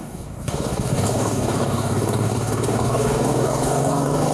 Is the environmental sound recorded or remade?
remade